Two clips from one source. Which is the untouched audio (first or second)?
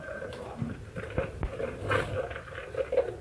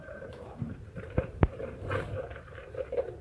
first